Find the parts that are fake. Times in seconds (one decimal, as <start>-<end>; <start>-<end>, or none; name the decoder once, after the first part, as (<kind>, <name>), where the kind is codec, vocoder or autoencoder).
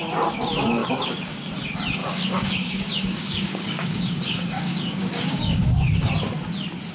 0.8-1.5 (codec, DAC); 2.0-6.1